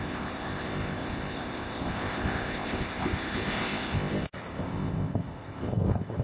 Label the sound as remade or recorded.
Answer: remade